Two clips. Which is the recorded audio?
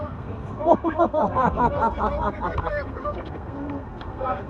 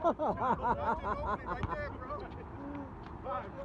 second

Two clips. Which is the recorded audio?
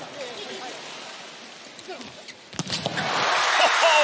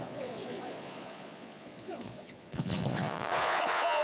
first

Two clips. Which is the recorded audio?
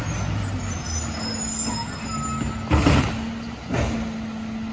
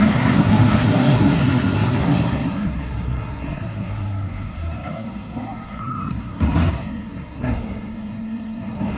first